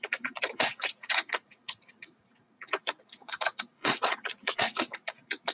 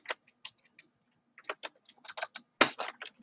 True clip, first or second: second